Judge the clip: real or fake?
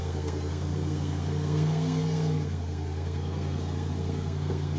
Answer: fake